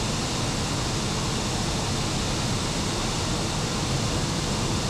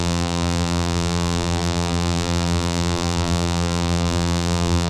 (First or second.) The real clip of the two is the first